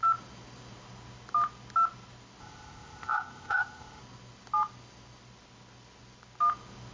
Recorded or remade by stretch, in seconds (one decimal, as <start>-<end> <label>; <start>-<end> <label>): 0.0-2.4 recorded; 2.4-4.0 remade; 4.0-6.9 recorded